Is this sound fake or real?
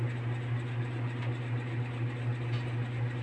real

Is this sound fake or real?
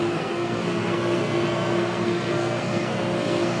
fake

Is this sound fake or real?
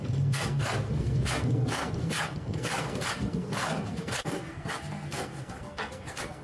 fake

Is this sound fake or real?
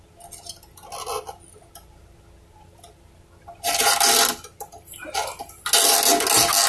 real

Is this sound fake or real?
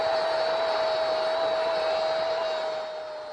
real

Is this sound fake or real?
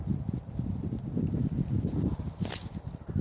real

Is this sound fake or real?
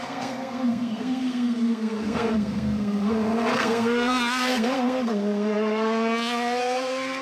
fake